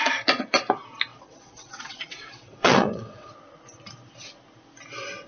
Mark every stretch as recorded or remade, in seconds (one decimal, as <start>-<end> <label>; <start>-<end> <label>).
0.0-1.1 recorded; 1.1-3.3 remade; 3.3-5.3 recorded